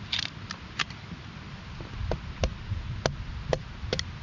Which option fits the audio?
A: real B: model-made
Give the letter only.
A